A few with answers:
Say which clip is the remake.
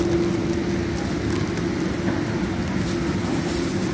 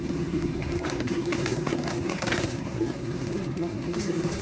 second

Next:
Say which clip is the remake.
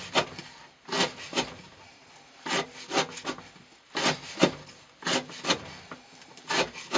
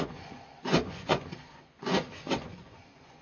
second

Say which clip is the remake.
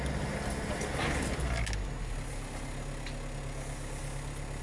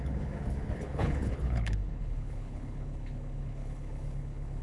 second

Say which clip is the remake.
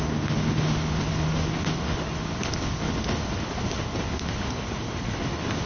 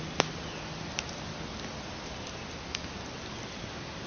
first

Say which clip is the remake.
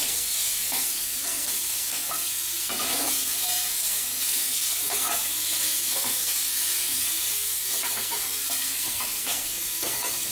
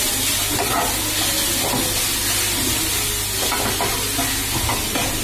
first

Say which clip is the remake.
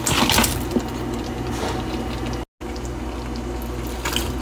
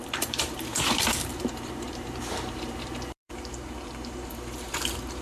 second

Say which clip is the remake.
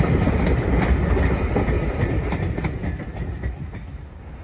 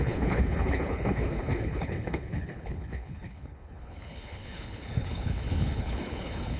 second